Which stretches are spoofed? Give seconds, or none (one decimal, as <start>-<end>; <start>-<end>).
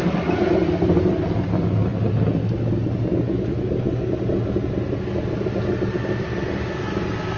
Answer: none